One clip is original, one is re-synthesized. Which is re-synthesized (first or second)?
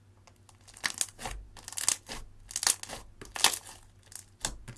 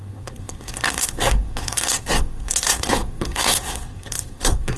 second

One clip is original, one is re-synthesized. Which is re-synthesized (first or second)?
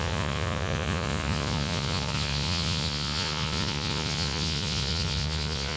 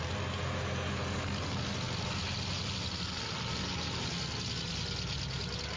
first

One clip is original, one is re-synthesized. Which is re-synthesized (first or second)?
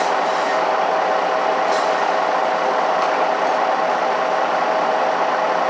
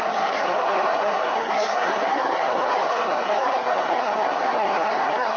second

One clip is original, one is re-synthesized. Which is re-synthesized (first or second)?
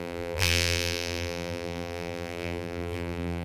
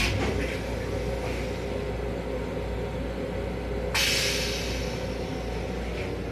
first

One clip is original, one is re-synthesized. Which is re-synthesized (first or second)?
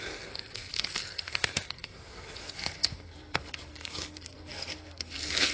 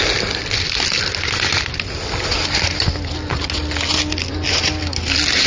first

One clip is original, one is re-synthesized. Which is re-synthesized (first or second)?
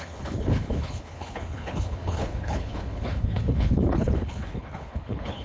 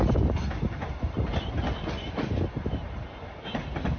first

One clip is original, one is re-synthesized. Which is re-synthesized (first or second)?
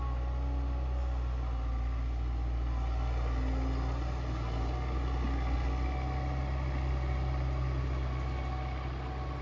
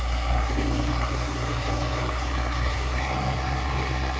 second